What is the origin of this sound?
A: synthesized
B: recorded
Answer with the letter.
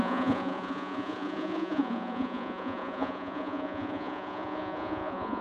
A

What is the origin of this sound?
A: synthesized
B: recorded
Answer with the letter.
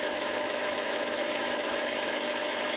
A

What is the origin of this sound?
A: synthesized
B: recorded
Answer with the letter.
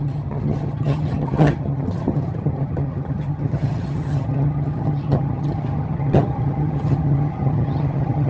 A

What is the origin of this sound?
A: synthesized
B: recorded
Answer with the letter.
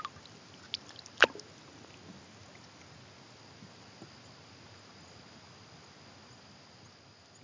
B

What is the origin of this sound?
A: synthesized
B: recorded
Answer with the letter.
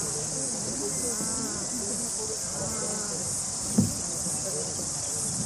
B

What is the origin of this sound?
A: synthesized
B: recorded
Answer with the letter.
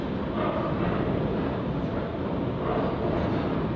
B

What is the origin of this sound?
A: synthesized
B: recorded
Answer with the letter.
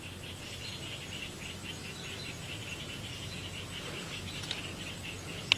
A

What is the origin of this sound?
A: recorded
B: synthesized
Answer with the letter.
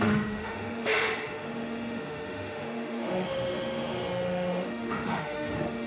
B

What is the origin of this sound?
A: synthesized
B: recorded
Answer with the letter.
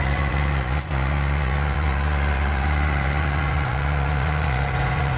A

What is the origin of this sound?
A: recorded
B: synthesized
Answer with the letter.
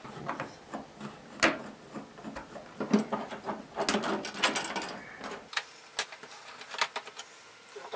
A